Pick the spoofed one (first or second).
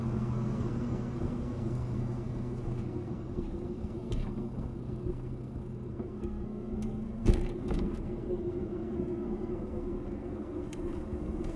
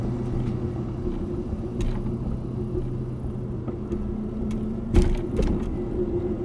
first